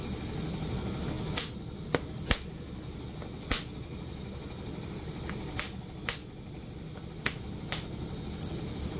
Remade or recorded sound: recorded